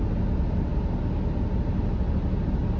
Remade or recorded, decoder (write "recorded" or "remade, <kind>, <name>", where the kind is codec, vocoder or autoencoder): recorded